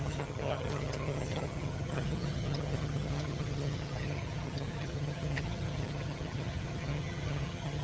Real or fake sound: fake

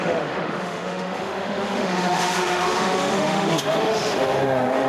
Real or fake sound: fake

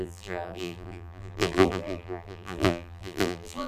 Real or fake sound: fake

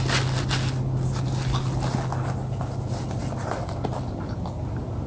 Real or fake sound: real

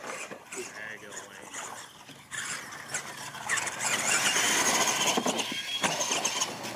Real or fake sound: real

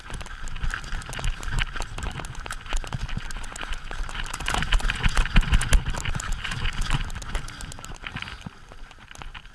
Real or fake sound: real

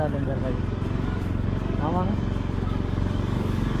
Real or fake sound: fake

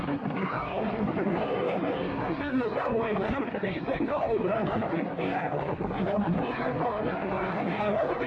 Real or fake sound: fake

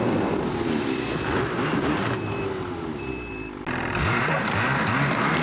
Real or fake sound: real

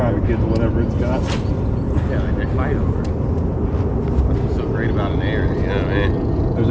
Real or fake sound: real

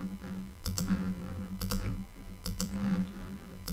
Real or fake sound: fake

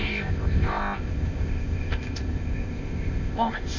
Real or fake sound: fake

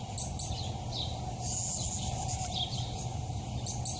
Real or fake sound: real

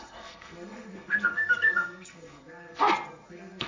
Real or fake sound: fake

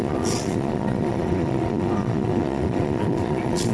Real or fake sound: fake